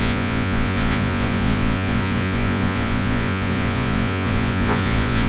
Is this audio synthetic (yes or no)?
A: yes